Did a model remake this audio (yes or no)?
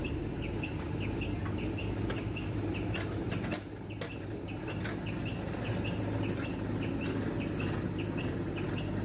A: no